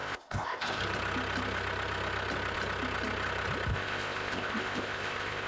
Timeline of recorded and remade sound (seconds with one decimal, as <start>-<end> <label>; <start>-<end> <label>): 0.0-0.8 remade; 0.8-3.7 recorded; 3.7-5.5 remade